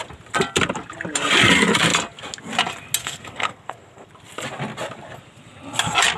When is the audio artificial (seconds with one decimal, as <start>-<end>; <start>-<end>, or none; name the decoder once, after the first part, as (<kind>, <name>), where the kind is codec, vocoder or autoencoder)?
3.0-4.1 (codec, SNAC)